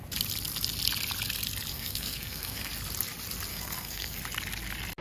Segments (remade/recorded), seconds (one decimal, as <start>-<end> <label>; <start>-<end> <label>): 0.0-1.7 recorded; 1.7-2.7 remade; 2.7-3.5 recorded; 3.5-4.2 remade; 4.2-5.0 recorded